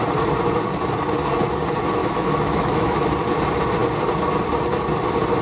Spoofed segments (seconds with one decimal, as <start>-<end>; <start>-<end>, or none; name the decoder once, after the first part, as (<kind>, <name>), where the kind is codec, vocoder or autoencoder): 2.0-3.1 (autoencoder, DAC-VAE)